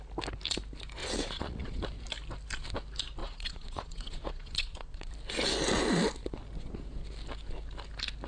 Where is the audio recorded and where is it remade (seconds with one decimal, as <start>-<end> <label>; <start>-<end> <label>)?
0.0-1.0 recorded; 1.0-1.8 remade; 1.8-3.2 recorded; 3.2-5.1 remade; 5.1-8.3 recorded